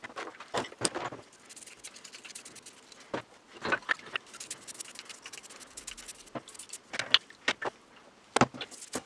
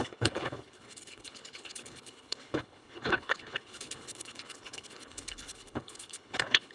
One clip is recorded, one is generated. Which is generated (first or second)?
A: second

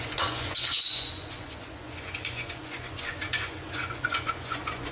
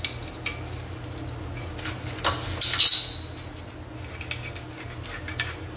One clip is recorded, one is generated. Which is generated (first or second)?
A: first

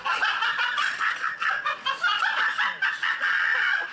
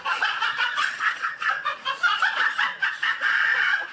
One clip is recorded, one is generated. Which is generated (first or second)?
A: second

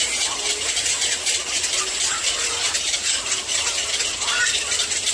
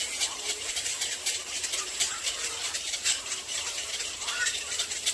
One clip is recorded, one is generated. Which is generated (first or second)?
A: second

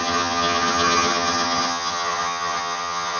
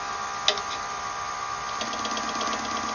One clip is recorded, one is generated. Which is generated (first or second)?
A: first